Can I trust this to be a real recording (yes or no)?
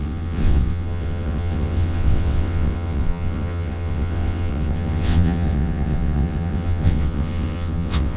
no